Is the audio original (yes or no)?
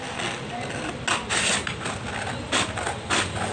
yes